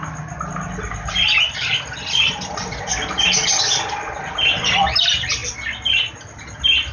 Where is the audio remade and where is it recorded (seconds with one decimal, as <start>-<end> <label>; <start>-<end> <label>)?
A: 0.0-6.9 recorded